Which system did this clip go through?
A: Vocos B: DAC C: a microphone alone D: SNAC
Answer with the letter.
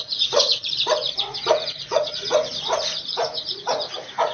A